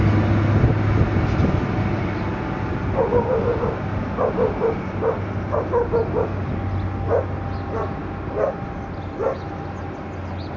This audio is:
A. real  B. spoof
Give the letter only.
A